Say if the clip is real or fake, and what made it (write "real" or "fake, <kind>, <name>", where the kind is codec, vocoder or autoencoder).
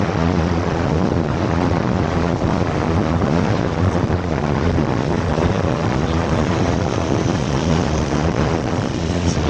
fake, vocoder, Vocos